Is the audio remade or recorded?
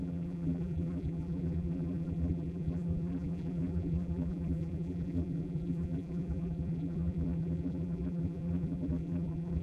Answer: remade